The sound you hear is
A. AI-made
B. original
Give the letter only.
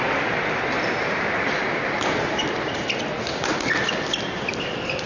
B